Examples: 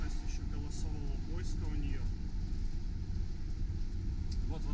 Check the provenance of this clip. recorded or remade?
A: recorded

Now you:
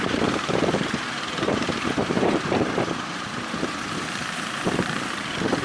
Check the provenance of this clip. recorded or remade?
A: remade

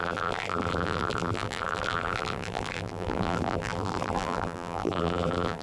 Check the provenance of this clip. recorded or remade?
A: remade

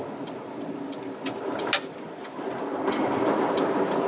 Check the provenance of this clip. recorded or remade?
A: recorded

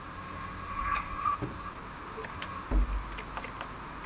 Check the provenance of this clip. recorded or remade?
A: recorded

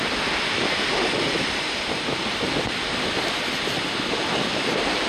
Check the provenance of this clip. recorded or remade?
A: recorded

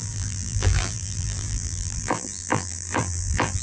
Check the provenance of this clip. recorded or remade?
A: remade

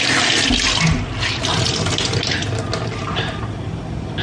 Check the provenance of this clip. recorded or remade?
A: recorded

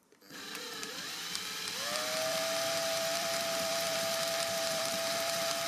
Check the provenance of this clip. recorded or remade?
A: remade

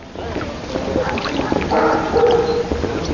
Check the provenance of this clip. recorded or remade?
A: recorded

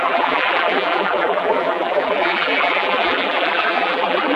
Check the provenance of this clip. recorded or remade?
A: remade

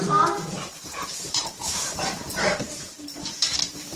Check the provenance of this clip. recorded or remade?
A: remade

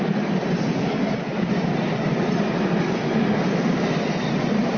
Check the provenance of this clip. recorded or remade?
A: recorded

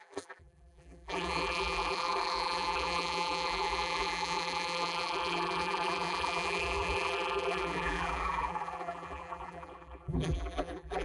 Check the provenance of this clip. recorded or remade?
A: remade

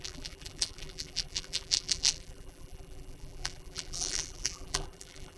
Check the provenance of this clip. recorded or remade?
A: remade